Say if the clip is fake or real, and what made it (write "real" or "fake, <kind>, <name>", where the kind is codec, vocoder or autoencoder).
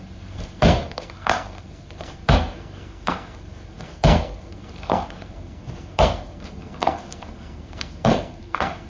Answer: fake, codec, SNAC